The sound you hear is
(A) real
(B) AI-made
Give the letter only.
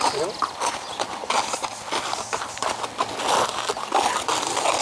A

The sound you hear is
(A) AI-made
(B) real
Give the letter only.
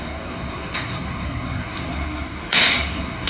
A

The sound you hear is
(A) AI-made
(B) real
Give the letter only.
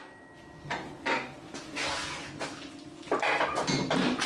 B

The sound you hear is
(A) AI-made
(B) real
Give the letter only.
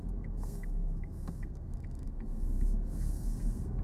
A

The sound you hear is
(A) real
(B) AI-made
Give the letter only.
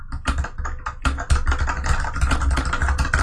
A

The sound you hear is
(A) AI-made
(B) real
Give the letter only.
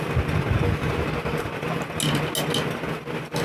B